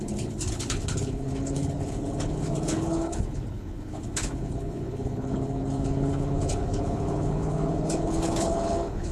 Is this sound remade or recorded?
remade